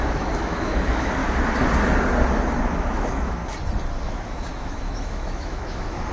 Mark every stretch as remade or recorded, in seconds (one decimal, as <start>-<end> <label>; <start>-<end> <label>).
0.0-1.2 remade; 1.2-2.6 recorded; 2.6-3.4 remade; 3.4-4.0 recorded; 4.0-6.1 remade